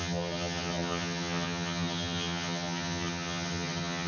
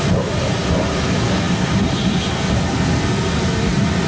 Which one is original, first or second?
second